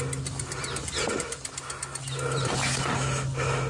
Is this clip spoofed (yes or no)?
no